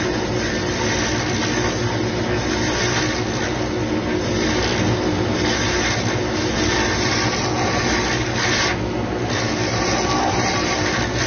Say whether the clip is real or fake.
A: real